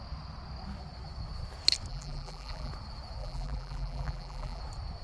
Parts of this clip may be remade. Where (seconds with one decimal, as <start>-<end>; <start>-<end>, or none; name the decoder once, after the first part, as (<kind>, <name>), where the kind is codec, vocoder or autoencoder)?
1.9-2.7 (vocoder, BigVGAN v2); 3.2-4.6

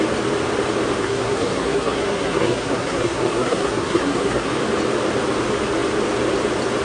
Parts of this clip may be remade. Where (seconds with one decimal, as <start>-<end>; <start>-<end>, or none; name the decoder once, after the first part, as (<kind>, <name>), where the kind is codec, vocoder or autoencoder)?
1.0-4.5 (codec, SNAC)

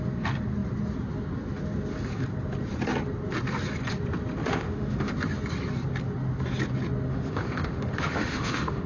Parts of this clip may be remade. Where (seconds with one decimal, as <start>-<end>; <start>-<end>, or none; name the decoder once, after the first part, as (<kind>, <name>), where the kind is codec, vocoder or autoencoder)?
4.4-5.1 (autoencoder, DAC-VAE); 7.1-8.9

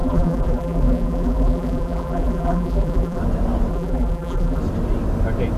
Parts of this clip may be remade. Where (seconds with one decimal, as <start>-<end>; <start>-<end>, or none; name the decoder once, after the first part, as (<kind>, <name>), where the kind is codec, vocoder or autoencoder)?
0.0-3.2 (vocoder, BigVGAN v2); 3.7-4.6

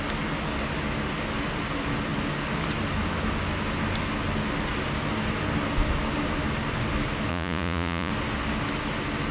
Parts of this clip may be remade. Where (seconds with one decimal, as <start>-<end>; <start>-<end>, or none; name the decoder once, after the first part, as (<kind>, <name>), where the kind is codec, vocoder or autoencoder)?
7.3-8.1 (vocoder, Vocos)

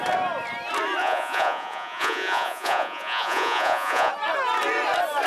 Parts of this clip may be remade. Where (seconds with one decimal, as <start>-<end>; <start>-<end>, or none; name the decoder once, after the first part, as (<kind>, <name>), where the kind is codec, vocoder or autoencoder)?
1.0-4.1 (vocoder, Vocos)